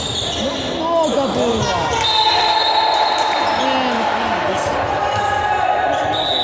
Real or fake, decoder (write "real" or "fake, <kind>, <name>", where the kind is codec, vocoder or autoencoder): real